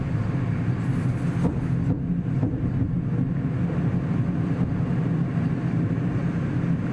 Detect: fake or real real